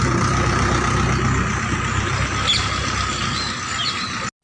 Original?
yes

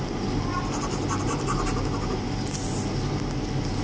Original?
yes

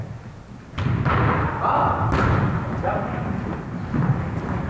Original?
yes